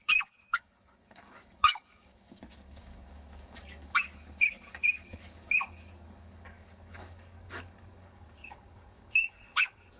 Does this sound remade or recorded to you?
remade